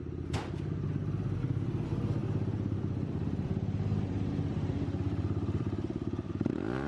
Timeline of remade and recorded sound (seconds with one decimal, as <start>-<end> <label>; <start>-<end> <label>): 0.0-2.2 recorded; 2.2-6.3 remade; 6.3-6.9 recorded